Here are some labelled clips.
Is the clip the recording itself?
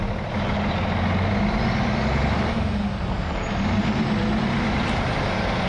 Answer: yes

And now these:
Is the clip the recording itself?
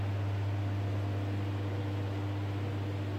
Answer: yes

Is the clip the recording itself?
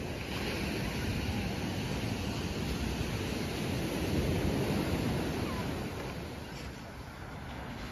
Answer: yes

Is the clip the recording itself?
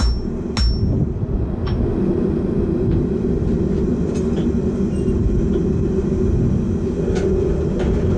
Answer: yes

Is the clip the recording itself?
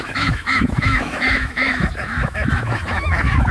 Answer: no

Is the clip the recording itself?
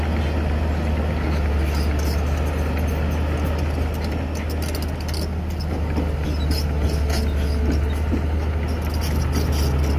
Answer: yes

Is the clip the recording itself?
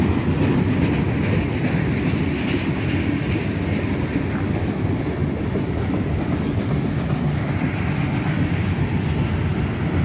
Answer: yes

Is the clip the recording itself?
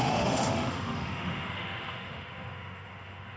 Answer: no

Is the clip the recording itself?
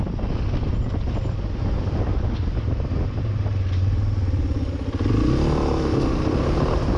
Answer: yes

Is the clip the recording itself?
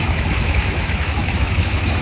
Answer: no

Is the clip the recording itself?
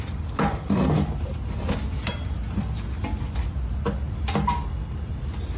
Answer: yes